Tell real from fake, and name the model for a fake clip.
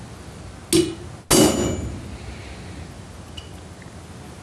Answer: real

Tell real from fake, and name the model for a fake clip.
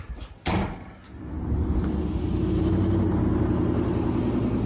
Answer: real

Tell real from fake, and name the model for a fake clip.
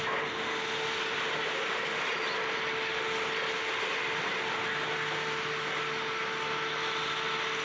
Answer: real